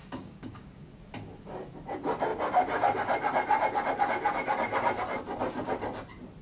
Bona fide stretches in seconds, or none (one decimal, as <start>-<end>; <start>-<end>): 1.0-6.4